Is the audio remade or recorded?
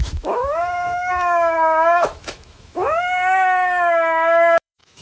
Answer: remade